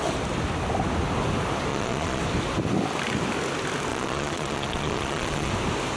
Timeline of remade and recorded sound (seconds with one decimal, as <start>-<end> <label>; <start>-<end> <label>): 0.0-1.7 recorded; 1.7-2.2 remade; 2.2-3.9 recorded; 3.9-5.5 remade; 5.5-6.0 recorded